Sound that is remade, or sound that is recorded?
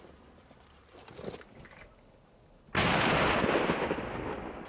recorded